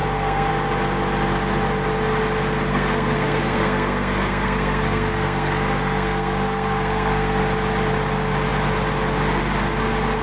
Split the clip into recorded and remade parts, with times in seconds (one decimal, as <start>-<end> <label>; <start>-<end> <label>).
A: 0.0-0.5 remade; 0.5-2.7 recorded; 2.7-7.4 remade; 7.4-10.2 recorded